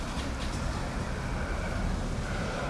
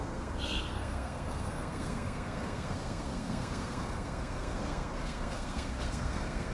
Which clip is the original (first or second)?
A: first